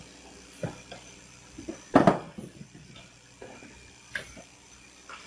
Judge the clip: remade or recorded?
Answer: recorded